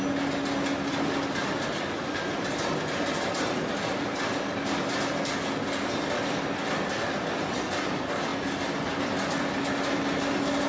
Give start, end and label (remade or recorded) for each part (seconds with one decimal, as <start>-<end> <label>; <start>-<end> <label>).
0.0-10.7 recorded